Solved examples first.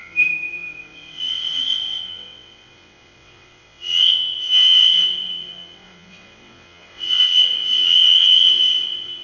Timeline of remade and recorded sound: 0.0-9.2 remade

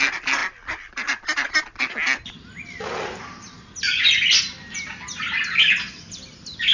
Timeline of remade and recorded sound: 0.0-6.7 recorded

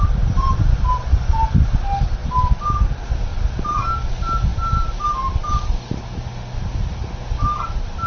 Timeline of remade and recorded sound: 0.0-8.1 recorded

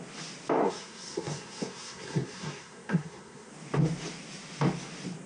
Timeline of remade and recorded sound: 0.0-0.6 recorded; 0.6-3.5 remade; 3.5-5.3 recorded

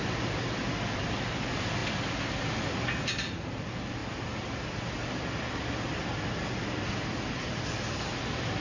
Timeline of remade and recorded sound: 0.0-8.6 recorded

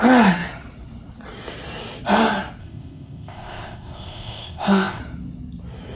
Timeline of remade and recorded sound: 0.0-2.6 recorded; 2.6-5.0 remade; 5.0-6.0 recorded

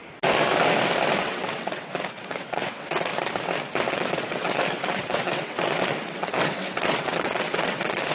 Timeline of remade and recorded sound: 0.0-1.2 recorded; 1.2-3.1 remade; 3.1-3.9 recorded; 3.9-8.1 remade